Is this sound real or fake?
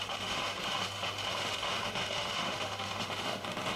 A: fake